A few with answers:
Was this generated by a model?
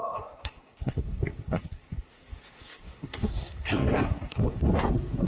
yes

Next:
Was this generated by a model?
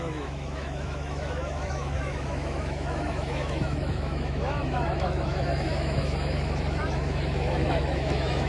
yes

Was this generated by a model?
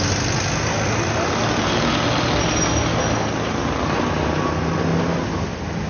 no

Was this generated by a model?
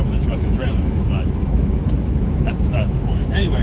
yes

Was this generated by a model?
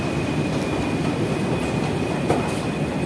no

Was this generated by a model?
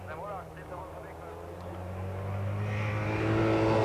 no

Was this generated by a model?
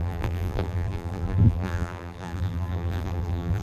yes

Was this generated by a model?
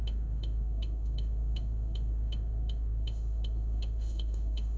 yes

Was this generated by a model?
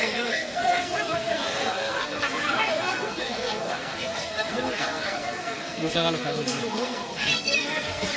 yes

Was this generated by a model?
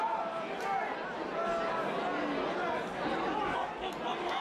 no